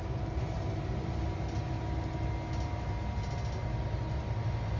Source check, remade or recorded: recorded